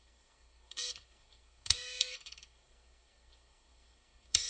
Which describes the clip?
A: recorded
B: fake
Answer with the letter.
B